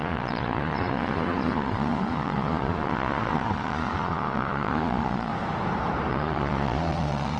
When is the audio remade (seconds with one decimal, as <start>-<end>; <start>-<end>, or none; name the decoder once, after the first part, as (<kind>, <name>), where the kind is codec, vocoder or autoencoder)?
0.0-5.3 (vocoder, Vocos); 6.1-7.4